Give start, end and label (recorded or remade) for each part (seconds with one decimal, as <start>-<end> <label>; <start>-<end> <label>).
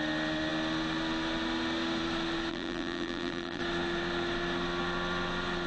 0.0-2.5 recorded; 2.5-3.6 remade; 3.6-5.7 recorded